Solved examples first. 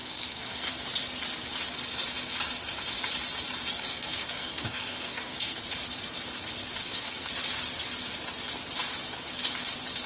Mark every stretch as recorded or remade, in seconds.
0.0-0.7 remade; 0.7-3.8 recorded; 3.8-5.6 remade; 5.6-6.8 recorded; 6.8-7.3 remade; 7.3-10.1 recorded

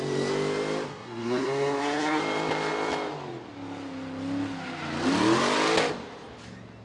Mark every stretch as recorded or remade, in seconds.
0.0-0.9 recorded; 0.9-2.2 remade; 2.2-6.8 recorded

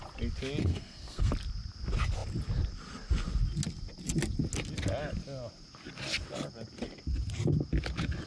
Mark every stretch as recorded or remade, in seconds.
0.0-0.6 recorded; 0.6-1.3 remade; 1.3-8.3 recorded